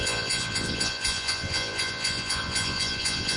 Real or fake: fake